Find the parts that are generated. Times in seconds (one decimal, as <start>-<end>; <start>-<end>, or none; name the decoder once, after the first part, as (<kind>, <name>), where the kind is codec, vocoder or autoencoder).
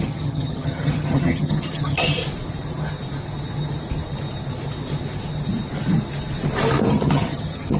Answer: 0.0-2.2 (vocoder, HiFi-GAN); 6.9-7.8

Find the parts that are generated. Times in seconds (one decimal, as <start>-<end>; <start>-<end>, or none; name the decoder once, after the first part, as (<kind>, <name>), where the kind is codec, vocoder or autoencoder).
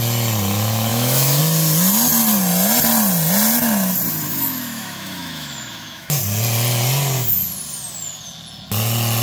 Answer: 0.9-1.4 (autoencoder, DAC-VAE); 4.3-6.2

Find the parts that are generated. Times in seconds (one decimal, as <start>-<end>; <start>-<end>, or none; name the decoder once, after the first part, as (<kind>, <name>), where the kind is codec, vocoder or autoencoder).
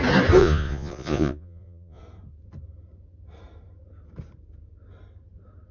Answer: 0.4-2.0 (vocoder, Vocos)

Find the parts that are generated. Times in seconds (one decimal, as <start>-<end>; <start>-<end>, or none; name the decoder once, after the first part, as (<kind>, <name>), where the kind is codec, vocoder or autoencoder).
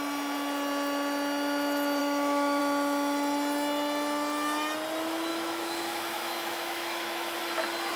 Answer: 2.0-2.6 (autoencoder, DAC-VAE); 5.3-7.4